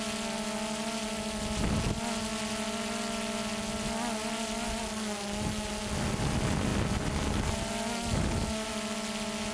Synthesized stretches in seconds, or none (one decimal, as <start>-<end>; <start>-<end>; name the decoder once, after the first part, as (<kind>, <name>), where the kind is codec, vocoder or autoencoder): none